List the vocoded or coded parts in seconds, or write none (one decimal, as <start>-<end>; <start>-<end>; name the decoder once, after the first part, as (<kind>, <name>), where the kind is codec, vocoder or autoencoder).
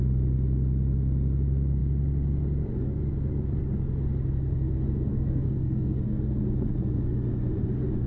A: 5.1-6.4 (codec, SNAC)